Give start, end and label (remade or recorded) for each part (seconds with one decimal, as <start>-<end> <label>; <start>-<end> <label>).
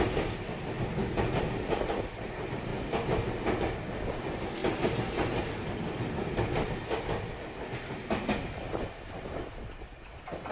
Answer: 0.0-10.5 recorded